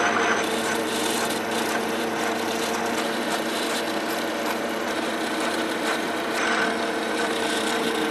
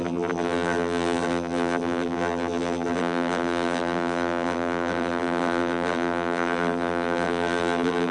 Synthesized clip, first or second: second